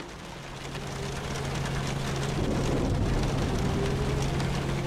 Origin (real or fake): real